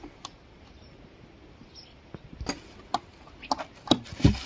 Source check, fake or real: real